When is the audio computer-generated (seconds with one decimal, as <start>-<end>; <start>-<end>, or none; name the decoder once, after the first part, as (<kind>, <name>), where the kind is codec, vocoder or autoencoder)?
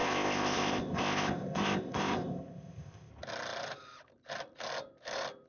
0.0-3.1 (codec, ZipCodec)